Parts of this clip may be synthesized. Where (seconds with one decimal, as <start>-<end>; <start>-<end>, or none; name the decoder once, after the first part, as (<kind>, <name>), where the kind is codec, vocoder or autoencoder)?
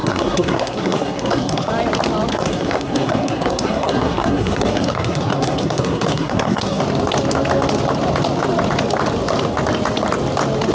0.0-1.7 (codec, SNAC); 2.3-6.8